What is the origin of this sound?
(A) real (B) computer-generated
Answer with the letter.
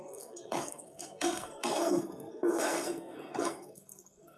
B